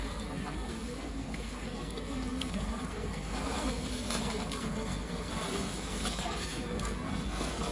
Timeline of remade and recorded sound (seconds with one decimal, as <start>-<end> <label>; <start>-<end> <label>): 0.0-7.7 remade